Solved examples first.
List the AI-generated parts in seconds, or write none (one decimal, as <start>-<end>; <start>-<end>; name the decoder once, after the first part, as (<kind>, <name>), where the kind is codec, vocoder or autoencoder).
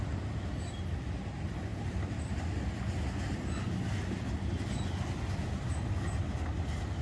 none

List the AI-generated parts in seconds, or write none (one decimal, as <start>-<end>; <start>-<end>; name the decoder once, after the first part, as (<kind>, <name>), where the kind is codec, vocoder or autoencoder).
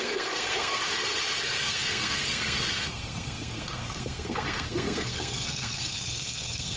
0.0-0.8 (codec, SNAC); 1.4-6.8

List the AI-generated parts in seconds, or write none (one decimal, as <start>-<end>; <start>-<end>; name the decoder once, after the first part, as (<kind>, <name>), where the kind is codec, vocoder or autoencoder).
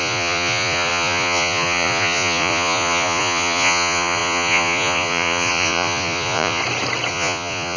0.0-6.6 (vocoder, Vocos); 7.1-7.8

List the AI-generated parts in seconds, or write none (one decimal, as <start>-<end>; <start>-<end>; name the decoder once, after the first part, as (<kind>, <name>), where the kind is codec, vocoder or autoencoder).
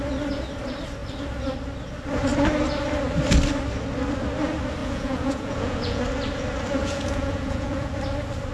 4.8-6.0 (vocoder, Vocos); 6.8-7.9